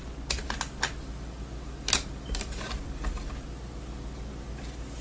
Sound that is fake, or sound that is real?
real